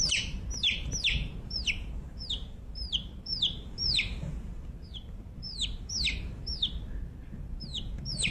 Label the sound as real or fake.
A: fake